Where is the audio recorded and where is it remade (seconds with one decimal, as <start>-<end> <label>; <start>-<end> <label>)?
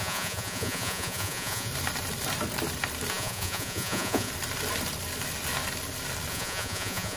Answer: 0.0-1.7 remade; 1.7-3.1 recorded; 3.1-4.3 remade; 4.3-6.3 recorded; 6.3-7.2 remade